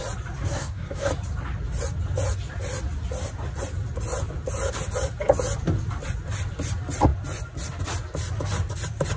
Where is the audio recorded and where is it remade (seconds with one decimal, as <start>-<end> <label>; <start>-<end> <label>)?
0.0-0.5 recorded; 0.5-1.1 remade; 1.1-9.2 recorded